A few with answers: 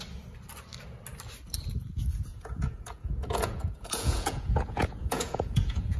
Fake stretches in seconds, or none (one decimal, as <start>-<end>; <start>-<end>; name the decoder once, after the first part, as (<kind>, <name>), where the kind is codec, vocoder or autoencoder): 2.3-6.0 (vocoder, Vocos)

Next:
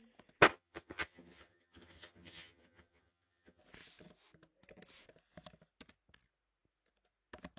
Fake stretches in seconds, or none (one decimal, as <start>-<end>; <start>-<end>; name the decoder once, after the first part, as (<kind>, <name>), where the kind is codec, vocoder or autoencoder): 0.5-3.6 (vocoder, HiFi-GAN)

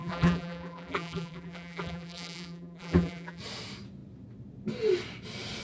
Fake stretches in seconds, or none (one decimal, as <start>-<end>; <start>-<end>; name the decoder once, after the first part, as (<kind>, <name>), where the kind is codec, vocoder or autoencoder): 0.0-3.4 (vocoder, BigVGAN v2)

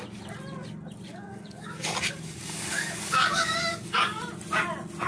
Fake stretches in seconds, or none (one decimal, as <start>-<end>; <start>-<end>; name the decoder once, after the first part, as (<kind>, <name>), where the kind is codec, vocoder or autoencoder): 1.1-4.2 (codec, DAC)

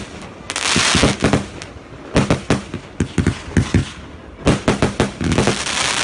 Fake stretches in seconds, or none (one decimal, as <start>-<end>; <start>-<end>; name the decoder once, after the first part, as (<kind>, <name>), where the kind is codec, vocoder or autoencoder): 3.8-4.4 (vocoder, BigVGAN v2)

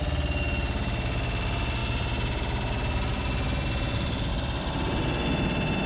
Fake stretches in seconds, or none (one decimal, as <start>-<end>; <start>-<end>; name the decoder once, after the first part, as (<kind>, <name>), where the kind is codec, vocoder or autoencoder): none